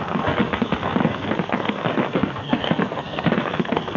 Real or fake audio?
fake